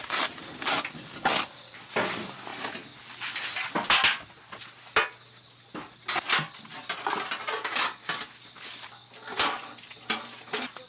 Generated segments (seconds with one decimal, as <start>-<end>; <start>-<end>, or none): none